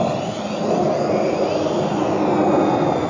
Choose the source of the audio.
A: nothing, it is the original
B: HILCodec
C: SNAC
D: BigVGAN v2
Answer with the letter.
A